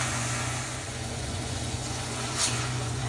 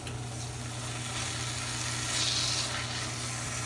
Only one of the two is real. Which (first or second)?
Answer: second